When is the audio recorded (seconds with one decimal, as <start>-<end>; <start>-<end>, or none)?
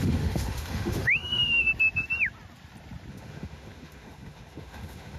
1.7-3.1